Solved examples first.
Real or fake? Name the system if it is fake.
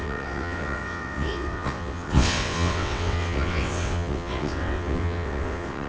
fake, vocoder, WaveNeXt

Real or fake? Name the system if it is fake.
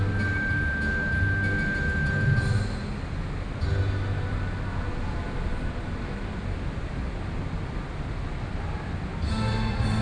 real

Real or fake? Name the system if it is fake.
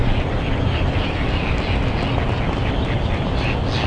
real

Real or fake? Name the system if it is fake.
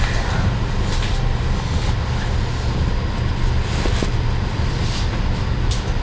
real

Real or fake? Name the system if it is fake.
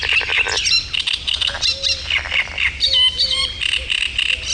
real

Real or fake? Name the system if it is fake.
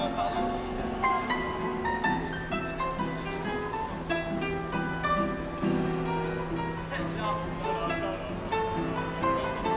real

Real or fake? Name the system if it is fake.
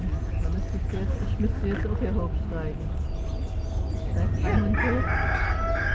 real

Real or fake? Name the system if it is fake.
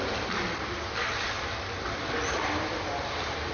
real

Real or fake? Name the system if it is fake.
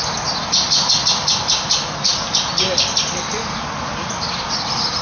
real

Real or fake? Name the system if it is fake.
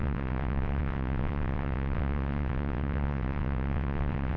fake, vocoder, WaveNeXt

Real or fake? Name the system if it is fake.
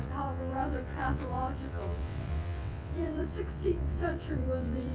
fake, vocoder, WaveNeXt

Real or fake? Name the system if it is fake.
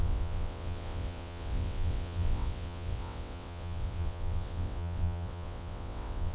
fake, vocoder, WaveNeXt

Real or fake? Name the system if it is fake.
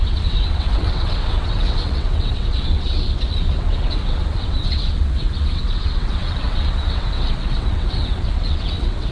fake, vocoder, WaveNeXt